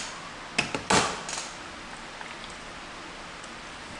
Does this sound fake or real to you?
real